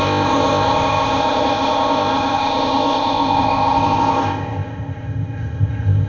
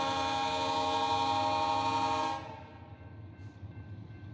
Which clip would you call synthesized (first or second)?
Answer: first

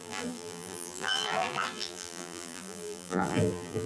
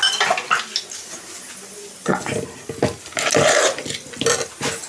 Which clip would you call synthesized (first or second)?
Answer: first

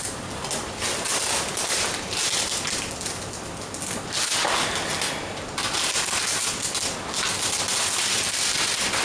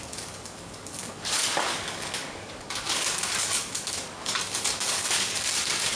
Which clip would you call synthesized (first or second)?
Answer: second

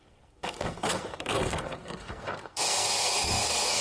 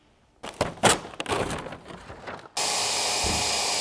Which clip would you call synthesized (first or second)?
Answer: first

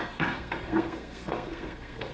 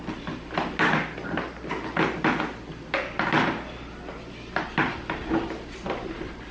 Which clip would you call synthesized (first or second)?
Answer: first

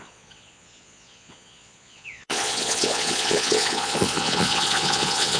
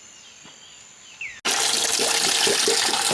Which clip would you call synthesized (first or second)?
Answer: first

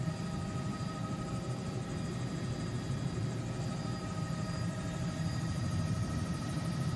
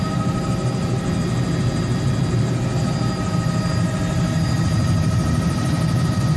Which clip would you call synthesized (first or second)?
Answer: first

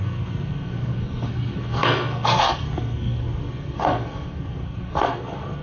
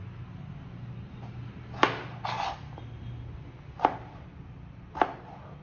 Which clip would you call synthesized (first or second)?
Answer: first